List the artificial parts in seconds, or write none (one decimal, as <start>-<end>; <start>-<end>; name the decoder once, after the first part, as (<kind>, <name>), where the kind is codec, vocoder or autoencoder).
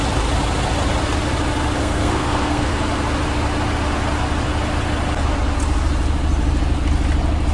1.8-2.7 (codec, SNAC)